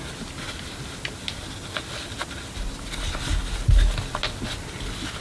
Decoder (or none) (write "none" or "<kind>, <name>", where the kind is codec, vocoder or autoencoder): none